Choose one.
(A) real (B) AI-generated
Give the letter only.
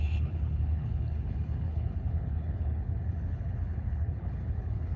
B